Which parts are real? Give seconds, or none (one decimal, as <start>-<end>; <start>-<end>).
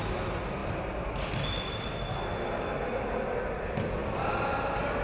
0.0-5.0